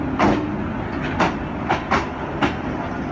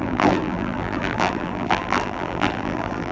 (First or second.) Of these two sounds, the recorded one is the first